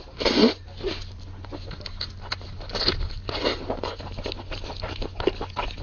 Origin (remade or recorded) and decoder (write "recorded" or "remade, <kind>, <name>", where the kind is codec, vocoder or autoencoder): recorded